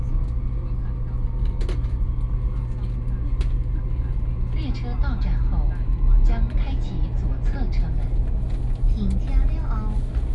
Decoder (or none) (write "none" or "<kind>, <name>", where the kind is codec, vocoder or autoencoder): none